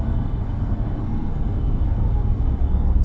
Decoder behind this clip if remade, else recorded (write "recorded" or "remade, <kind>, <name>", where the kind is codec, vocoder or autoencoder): remade, codec, SNAC